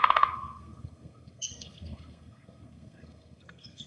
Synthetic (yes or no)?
yes